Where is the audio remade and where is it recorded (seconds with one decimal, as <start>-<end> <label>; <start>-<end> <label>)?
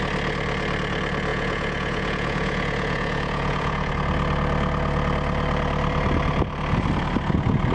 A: 0.0-1.3 recorded; 1.3-3.9 remade; 3.9-7.7 recorded